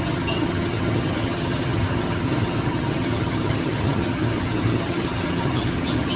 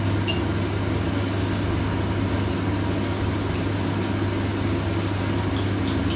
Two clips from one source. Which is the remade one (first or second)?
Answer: first